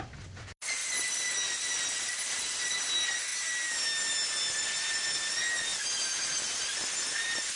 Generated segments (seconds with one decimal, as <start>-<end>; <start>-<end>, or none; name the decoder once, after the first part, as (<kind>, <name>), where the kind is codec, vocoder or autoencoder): 0.8-1.3 (vocoder, BigVGAN v2)